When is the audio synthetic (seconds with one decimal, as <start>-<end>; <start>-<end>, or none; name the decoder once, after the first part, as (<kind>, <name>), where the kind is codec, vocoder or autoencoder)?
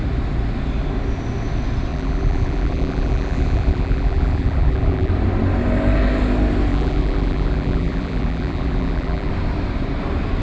1.9-5.1 (vocoder, BigVGAN v2); 6.7-9.3